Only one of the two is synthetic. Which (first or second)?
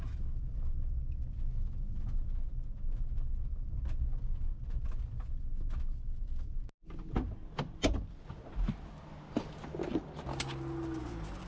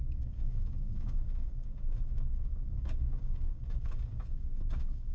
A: second